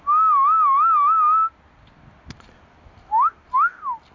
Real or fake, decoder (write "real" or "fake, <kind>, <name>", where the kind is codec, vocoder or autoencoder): real